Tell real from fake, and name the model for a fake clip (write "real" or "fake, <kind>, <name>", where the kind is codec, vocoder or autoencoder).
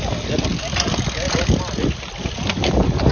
real